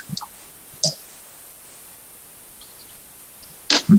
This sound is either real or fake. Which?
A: real